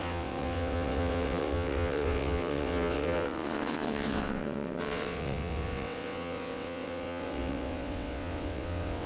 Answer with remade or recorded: remade